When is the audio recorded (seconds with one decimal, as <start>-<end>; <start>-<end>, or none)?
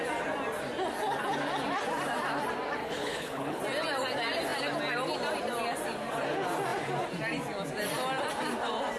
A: 0.0-2.8; 3.6-9.0